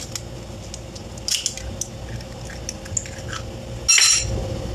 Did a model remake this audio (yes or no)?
no